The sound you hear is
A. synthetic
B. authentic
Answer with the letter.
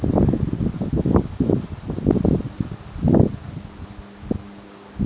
B